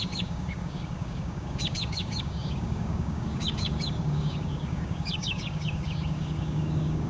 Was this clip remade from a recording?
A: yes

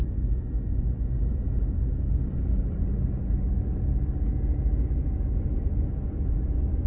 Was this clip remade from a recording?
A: no